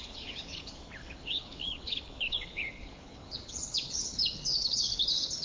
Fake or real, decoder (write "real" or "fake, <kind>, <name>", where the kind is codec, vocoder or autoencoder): fake, codec, HILCodec